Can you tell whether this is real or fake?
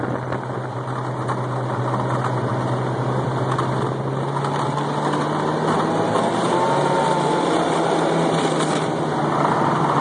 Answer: real